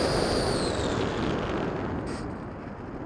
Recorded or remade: recorded